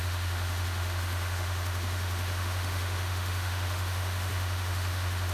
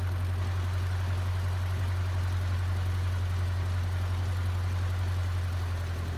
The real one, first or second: second